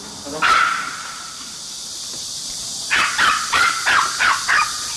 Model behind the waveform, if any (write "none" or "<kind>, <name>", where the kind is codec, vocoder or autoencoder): vocoder, BigVGAN v2